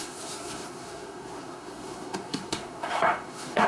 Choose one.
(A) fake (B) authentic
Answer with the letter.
A